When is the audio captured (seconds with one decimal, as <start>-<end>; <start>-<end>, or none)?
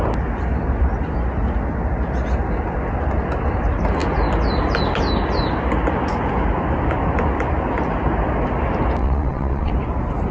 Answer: 0.0-9.0; 9.7-10.3